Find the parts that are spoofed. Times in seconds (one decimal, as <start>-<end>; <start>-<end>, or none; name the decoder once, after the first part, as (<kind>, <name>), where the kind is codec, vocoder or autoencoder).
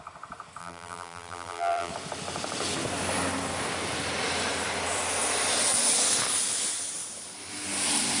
0.6-1.9 (vocoder, BigVGAN v2)